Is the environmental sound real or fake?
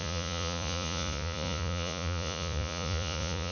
fake